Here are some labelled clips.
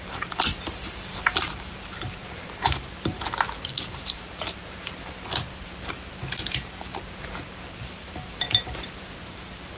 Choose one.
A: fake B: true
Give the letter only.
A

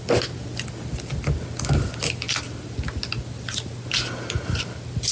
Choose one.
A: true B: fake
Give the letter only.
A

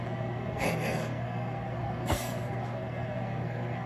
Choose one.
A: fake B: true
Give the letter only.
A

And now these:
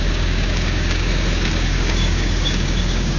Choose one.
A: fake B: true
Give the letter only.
A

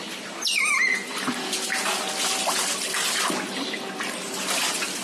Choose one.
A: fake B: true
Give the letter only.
B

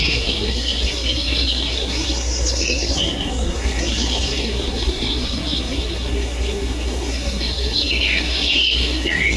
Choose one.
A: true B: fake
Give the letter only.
B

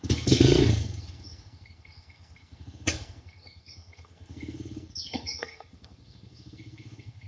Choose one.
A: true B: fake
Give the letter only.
B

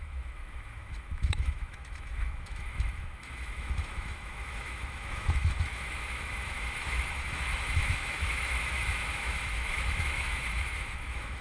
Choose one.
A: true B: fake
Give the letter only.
B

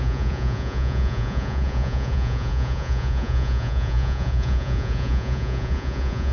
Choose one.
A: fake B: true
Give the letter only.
A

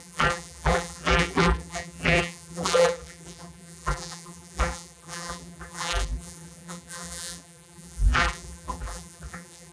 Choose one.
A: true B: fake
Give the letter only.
B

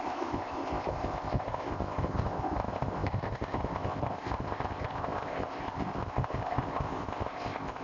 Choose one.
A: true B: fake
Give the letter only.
B